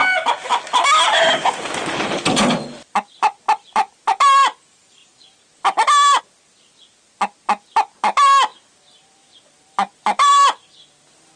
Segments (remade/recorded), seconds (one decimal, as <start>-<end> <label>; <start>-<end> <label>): 0.0-8.5 recorded; 8.5-11.4 remade